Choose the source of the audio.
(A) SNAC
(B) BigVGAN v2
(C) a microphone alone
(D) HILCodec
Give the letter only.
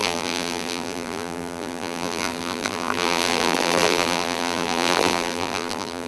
B